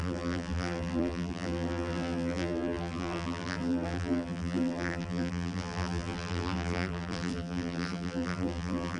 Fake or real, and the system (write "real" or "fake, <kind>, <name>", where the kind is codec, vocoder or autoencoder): fake, vocoder, BigVGAN v2